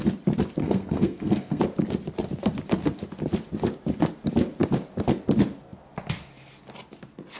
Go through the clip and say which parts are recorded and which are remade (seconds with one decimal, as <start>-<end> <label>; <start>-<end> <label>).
0.0-0.6 recorded; 0.6-1.6 remade; 1.6-7.4 recorded